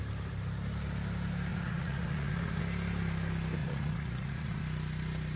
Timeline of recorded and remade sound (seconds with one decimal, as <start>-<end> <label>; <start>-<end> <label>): 0.0-1.5 recorded; 1.5-2.6 remade; 2.6-3.6 recorded; 3.6-4.6 remade; 4.6-5.4 recorded